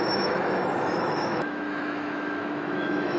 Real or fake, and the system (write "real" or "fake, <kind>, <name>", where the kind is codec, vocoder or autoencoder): fake, autoencoder, DAC-VAE